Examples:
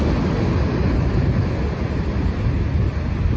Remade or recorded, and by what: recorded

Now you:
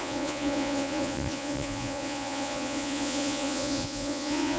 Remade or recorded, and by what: remade, vocoder, Vocos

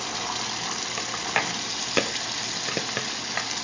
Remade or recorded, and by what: recorded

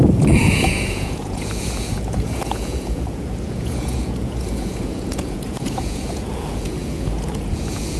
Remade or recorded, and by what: remade, vocoder, Vocos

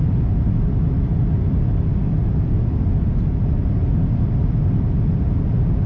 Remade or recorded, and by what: recorded